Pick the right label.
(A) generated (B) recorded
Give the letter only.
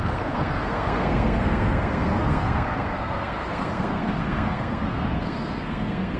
A